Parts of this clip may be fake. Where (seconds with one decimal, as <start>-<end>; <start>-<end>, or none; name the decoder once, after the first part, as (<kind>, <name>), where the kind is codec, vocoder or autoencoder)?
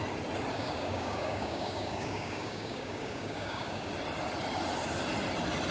0.5-3.9 (codec, DAC)